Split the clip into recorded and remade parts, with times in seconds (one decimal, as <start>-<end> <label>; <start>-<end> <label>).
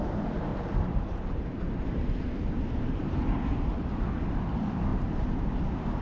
0.0-0.5 recorded; 0.5-3.2 remade; 3.2-4.9 recorded; 4.9-5.5 remade; 5.5-6.0 recorded